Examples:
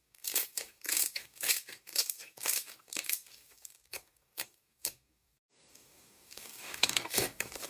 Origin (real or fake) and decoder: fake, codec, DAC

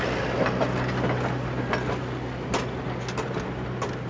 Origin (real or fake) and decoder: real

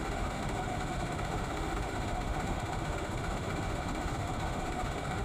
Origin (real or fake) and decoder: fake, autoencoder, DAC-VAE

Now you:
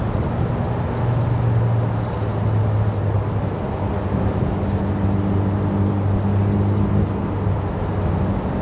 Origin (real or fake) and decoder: real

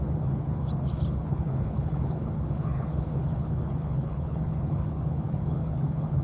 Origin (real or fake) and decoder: fake, codec, HILCodec